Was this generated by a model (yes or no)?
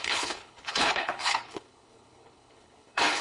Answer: yes